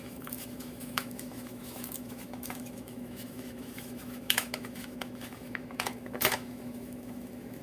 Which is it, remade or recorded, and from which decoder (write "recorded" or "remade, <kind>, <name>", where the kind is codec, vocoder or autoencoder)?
remade, autoencoder, DAC-VAE